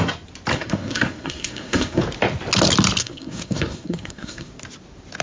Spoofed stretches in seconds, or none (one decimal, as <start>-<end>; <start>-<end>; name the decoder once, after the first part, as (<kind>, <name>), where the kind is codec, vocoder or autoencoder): 0.5-2.0 (codec, SNAC); 3.0-4.5